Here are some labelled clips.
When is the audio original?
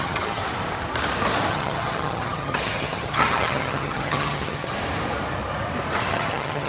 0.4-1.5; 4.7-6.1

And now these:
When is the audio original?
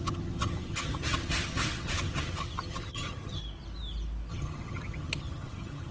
3.4-4.3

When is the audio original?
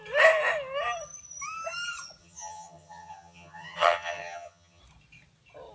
0.0-2.2; 4.8-5.7